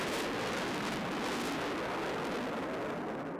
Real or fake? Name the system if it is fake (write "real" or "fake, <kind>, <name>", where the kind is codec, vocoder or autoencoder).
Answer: real